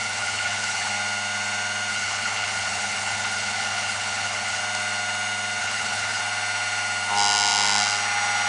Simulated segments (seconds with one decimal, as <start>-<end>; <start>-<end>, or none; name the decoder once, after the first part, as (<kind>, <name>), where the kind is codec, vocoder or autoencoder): 0.0-0.9 (codec, HILCodec); 1.9-4.6; 5.6-6.2

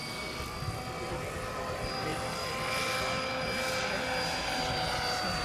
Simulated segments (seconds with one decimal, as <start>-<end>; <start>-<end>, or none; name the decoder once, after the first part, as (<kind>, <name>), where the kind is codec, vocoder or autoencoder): none

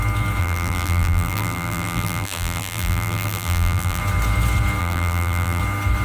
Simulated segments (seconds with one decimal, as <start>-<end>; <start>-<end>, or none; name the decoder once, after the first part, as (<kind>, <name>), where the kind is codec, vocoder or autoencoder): 0.4-4.0 (vocoder, BigVGAN v2); 4.8-5.6

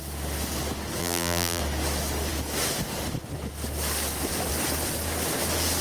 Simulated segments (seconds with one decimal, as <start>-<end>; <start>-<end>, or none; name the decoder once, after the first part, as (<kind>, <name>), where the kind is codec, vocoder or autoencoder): 1.0-1.6 (vocoder, BigVGAN v2)

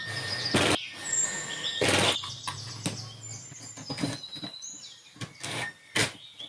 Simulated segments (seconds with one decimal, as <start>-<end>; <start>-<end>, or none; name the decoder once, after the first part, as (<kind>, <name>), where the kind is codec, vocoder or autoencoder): none

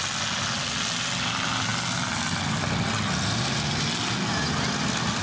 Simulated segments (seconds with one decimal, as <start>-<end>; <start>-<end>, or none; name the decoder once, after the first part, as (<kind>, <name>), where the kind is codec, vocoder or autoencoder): none

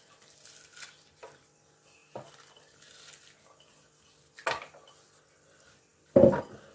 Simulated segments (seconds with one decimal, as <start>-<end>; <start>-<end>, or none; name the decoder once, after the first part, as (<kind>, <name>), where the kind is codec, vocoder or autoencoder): none